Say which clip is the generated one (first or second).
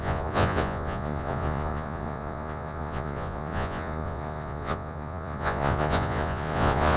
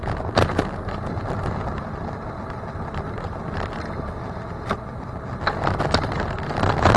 first